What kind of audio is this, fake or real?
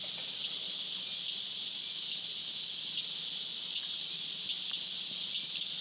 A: real